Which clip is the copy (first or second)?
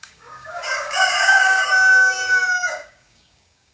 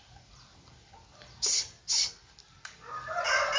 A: first